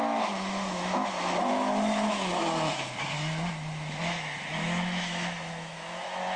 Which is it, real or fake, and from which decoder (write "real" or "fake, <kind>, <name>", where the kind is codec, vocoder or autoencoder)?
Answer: fake, autoencoder, DAC-VAE